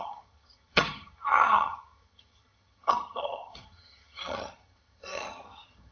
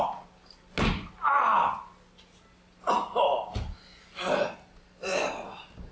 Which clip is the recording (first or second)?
second